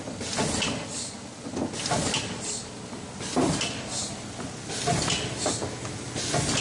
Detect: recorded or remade recorded